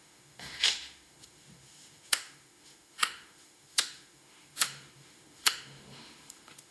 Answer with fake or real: fake